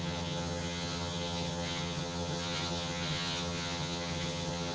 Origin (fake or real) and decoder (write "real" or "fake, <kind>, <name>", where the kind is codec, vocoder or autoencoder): fake, vocoder, HiFi-GAN